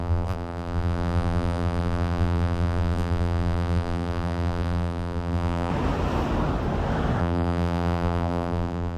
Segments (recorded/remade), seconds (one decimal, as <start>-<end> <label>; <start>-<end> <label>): 0.0-5.7 remade; 5.7-7.2 recorded; 7.2-9.0 remade